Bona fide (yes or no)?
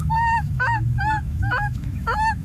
no